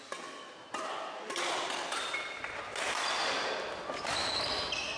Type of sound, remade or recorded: recorded